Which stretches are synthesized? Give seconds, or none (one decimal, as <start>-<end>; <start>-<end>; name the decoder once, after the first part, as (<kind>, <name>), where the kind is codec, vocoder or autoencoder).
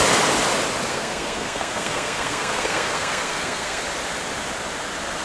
0.9-3.8 (codec, SNAC)